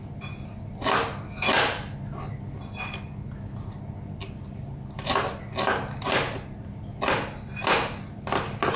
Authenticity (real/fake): real